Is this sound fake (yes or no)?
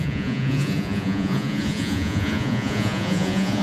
yes